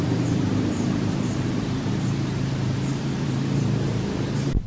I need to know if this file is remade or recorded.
remade